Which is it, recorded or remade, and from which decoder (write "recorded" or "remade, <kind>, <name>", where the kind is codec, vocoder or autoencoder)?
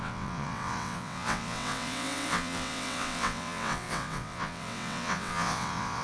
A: remade, vocoder, WaveNeXt